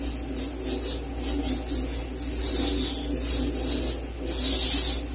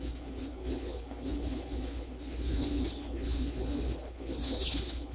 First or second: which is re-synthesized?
second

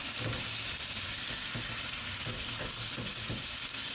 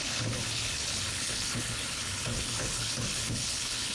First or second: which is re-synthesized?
second